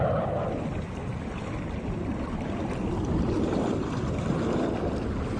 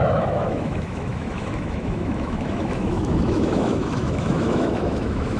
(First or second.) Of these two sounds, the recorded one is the first